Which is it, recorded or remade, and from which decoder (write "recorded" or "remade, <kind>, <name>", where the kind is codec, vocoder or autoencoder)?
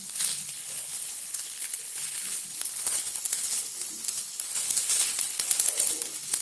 remade, codec, HILCodec